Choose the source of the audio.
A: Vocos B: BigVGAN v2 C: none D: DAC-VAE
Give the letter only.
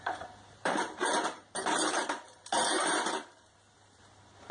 B